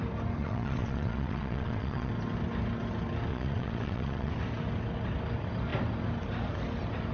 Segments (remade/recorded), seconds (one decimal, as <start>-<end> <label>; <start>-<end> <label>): 0.0-0.4 recorded; 0.4-2.1 remade; 2.1-3.3 recorded; 3.3-4.3 remade; 4.3-7.1 recorded